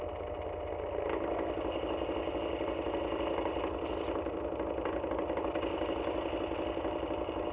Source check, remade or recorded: recorded